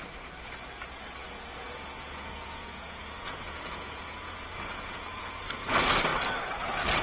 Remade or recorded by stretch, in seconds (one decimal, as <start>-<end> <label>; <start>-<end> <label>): 0.0-1.2 recorded; 1.2-5.4 remade; 5.4-7.0 recorded

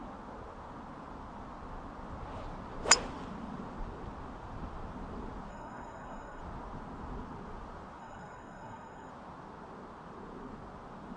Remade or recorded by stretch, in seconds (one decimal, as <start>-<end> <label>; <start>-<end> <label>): 0.0-5.5 recorded; 5.5-6.4 remade; 6.4-8.0 recorded; 8.0-9.1 remade; 9.1-11.2 recorded

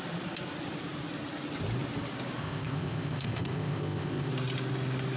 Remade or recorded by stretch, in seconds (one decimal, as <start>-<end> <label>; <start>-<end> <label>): 0.0-2.4 recorded; 2.4-4.3 remade; 4.3-5.2 recorded

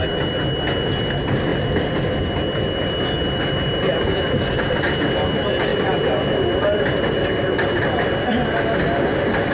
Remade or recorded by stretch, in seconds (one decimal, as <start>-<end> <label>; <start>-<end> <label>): 0.0-9.5 recorded

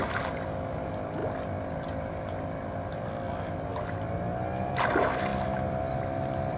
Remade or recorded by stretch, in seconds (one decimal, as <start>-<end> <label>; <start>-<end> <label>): 0.0-5.3 recorded; 5.3-6.6 remade